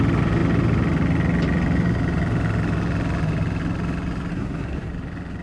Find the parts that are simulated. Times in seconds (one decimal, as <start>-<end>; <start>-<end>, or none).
4.3-4.9